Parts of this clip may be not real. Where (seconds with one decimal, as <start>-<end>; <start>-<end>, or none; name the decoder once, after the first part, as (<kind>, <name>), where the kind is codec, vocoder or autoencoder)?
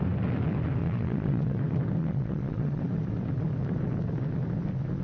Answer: 0.8-1.6 (vocoder, Vocos); 2.0-2.8